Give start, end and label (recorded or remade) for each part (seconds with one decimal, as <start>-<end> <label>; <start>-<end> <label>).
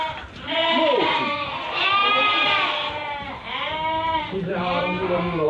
0.0-5.5 remade